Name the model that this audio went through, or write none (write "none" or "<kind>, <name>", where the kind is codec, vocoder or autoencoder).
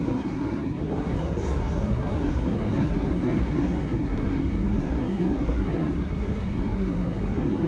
codec, SNAC